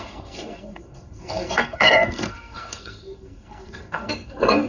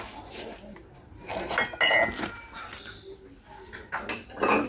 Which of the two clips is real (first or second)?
second